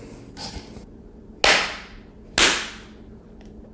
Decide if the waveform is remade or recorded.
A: recorded